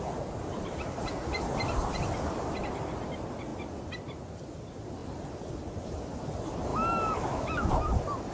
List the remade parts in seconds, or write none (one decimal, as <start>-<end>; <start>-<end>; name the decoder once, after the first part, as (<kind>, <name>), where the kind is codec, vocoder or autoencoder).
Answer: 6.7-7.7 (autoencoder, DAC-VAE)

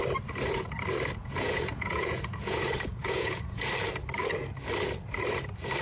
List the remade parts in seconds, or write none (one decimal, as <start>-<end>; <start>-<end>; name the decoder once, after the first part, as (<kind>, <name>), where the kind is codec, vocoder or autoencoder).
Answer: 1.2-3.6 (vocoder, Vocos)

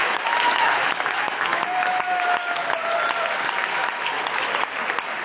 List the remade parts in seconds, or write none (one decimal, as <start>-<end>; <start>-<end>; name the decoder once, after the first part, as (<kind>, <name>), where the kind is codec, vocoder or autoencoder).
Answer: 0.0-2.4 (autoencoder, DAC-VAE); 3.8-4.5

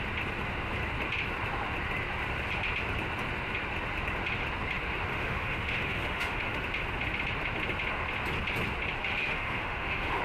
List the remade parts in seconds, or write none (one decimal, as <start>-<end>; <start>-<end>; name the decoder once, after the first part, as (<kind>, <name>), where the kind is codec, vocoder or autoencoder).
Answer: 5.1-6.6 (autoencoder, DAC-VAE); 9.0-10.2

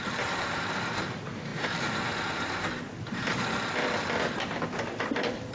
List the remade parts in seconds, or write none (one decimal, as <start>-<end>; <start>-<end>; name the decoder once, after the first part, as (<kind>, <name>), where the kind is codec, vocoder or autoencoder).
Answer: none

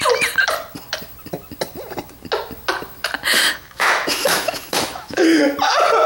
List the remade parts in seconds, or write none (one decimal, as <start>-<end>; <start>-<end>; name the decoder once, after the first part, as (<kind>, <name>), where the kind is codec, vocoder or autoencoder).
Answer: 3.3-5.4 (autoencoder, DAC-VAE)

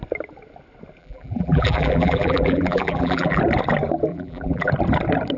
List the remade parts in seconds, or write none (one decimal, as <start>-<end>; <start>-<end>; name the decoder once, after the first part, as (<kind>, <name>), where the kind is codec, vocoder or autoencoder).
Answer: 1.0-3.4 (vocoder, BigVGAN v2); 4.1-4.7

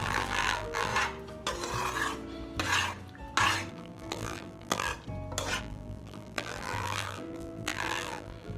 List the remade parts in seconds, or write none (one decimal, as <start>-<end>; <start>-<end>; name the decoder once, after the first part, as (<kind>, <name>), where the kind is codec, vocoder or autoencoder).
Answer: 0.0-0.9 (vocoder, BigVGAN v2); 3.7-4.9; 5.6-8.6